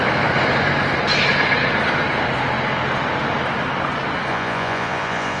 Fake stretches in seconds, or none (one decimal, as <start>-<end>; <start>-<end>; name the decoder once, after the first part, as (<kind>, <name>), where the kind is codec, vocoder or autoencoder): 4.3-5.4 (vocoder, Vocos)